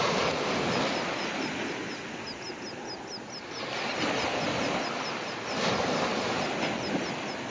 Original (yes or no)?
yes